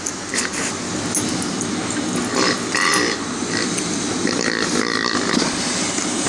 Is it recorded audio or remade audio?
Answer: recorded